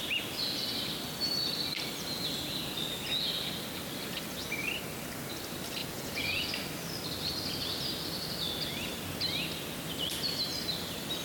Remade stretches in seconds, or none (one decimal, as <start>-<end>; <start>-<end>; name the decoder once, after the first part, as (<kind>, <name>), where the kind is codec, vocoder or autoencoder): 5.8-6.5 (vocoder, Vocos)